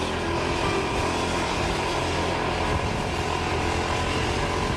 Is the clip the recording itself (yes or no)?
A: yes